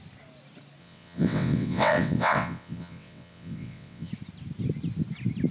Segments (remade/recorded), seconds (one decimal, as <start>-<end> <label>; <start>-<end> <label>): 0.0-0.8 recorded; 0.8-4.1 remade; 4.1-5.5 recorded